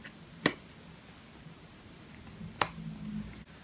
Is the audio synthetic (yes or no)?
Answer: no